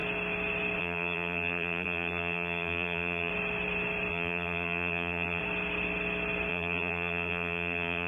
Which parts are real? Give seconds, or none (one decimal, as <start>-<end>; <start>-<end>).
0.0-0.8; 3.3-4.1; 5.4-6.5